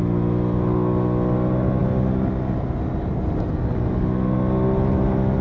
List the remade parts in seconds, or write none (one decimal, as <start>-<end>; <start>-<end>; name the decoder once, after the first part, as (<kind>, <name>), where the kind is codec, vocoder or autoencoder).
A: none